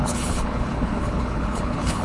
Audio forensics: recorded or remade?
remade